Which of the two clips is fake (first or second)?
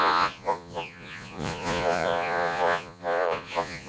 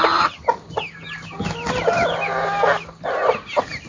first